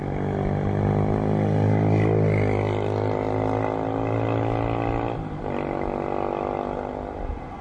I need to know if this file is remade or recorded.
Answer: recorded